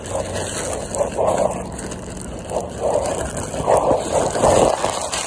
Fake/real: real